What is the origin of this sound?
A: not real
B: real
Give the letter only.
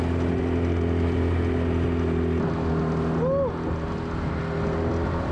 B